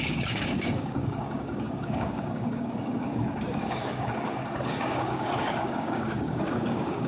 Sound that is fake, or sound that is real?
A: fake